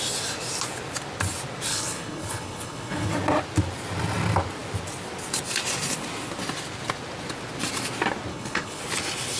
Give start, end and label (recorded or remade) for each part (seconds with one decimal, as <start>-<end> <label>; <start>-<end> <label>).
0.0-1.7 recorded; 1.7-3.1 remade; 3.1-8.3 recorded; 8.3-8.8 remade; 8.8-9.4 recorded